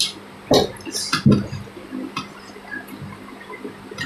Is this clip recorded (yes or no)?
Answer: no